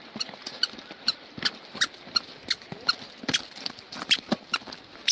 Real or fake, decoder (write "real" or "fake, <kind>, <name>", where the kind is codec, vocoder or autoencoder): real